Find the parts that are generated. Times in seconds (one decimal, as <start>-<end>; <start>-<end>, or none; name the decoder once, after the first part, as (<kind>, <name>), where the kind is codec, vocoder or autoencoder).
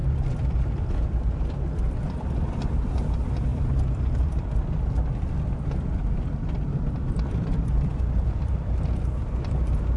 0.0-10.0 (vocoder, BigVGAN v2)